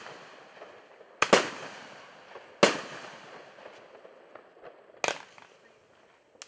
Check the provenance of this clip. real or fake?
real